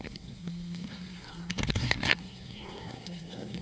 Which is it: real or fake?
fake